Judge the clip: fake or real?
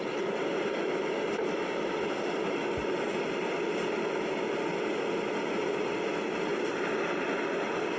real